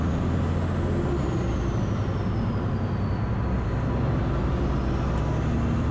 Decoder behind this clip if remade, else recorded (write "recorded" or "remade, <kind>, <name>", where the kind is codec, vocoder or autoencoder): recorded